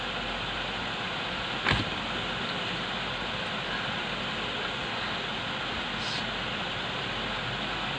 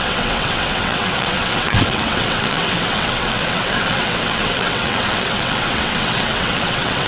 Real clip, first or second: first